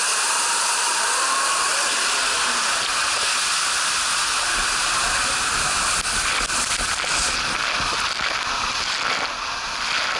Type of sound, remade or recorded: recorded